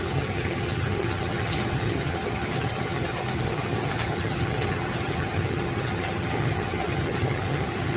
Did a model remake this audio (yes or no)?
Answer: yes